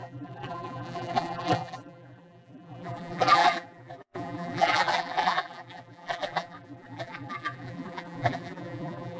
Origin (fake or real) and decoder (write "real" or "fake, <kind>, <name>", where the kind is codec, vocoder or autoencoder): fake, vocoder, BigVGAN v2